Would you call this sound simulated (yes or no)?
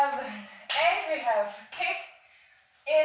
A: no